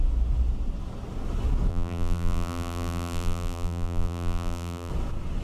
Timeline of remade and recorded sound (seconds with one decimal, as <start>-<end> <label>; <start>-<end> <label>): 0.0-1.7 recorded; 1.7-4.9 remade; 4.9-5.4 recorded